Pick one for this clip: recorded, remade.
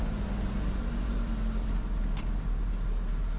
recorded